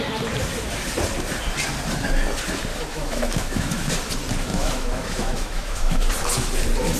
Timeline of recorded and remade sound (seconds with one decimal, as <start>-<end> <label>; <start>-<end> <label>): 0.0-2.7 recorded; 2.7-3.9 remade; 3.9-4.5 recorded; 4.5-6.1 remade; 6.1-7.0 recorded